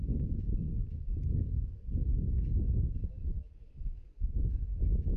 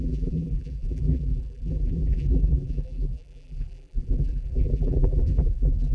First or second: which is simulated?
second